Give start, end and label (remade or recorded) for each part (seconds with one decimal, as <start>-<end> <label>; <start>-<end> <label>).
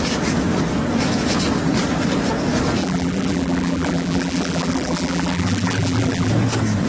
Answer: 0.0-2.8 recorded; 2.8-6.3 remade; 6.3-6.9 recorded